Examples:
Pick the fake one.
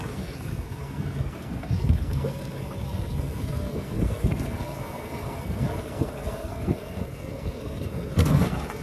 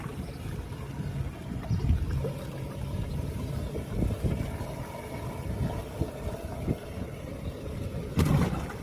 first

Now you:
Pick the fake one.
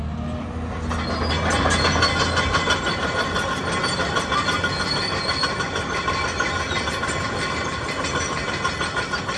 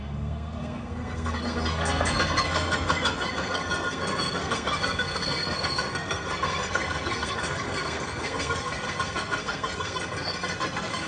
second